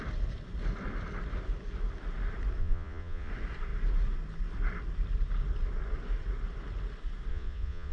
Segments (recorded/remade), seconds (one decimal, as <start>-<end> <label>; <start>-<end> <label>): 0.0-2.6 recorded; 2.6-3.3 remade; 3.3-7.3 recorded; 7.3-7.9 remade